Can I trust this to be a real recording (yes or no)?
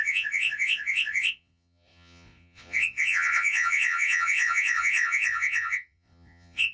no